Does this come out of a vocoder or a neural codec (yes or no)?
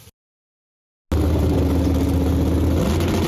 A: no